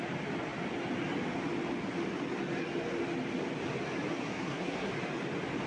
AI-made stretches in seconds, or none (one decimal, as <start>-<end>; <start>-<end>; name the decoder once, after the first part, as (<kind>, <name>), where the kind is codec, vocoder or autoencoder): 4.2-4.9 (codec, SNAC)